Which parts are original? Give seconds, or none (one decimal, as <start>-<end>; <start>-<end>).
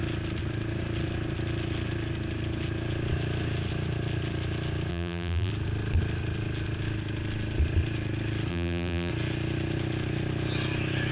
0.0-4.9; 5.5-8.5; 9.1-11.1